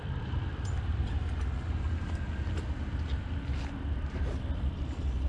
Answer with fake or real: fake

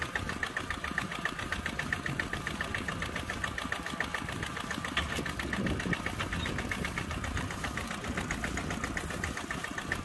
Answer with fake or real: real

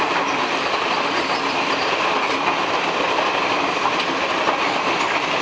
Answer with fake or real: fake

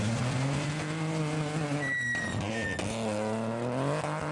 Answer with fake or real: real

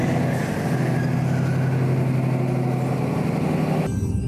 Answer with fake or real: real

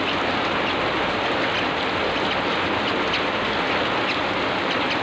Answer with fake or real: real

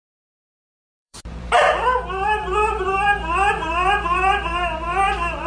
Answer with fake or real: fake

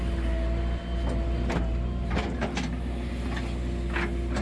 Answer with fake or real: real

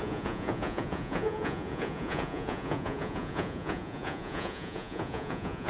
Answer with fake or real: fake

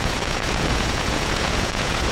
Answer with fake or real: fake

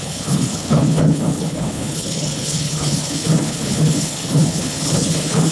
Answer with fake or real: fake